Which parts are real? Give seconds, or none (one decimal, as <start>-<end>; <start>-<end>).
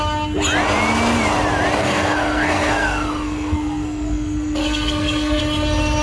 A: 0.0-1.8; 5.4-6.0